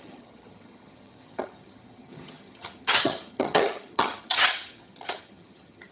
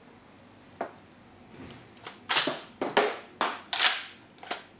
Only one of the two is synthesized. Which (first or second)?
first